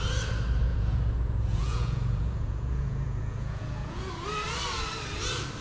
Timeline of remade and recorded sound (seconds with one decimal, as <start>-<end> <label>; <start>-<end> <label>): 0.0-0.7 recorded; 0.7-4.1 remade; 4.1-5.6 recorded